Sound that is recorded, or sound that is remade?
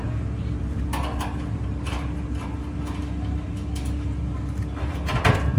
recorded